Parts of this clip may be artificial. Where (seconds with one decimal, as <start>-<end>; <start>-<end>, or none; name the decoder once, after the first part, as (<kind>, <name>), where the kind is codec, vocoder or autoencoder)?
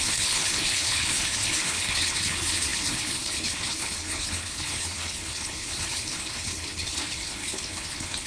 0.0-8.3 (codec, HILCodec)